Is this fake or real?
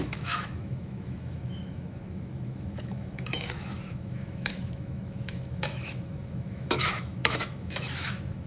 fake